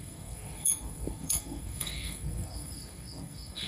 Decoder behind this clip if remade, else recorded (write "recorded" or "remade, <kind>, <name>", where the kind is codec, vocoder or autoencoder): remade, codec, SNAC